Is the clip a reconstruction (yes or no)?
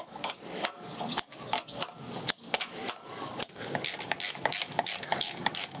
yes